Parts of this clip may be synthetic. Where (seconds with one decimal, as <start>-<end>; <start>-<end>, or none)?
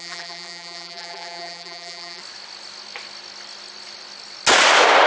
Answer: 0.0-2.2